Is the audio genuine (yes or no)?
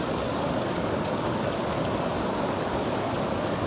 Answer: no